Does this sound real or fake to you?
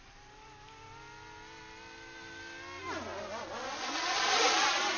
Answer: real